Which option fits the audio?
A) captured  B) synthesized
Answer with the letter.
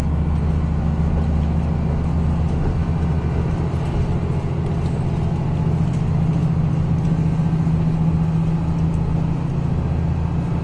A